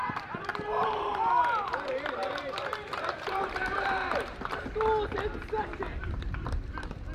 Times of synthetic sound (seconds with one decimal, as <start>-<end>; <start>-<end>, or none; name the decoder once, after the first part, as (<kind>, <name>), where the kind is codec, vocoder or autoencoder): 0.0-4.7 (vocoder, BigVGAN v2); 6.0-7.1